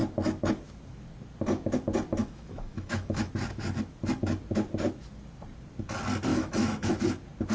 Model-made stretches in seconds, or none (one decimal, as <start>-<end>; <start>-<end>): 2.2-3.3; 6.3-6.9